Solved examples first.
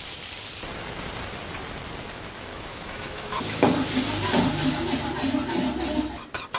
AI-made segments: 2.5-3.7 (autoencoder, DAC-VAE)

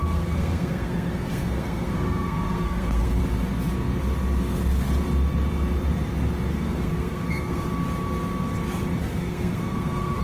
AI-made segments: 0.0-3.2 (codec, SNAC); 6.5-7.7; 9.0-10.2

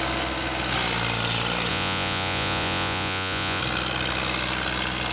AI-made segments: 1.7-3.6 (vocoder, Vocos)

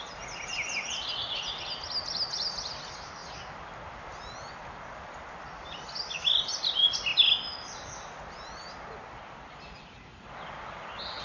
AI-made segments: none